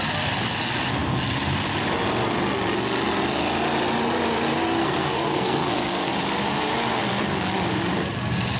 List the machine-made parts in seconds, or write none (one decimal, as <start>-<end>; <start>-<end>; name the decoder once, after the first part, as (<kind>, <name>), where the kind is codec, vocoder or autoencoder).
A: 4.8-6.1 (codec, SNAC)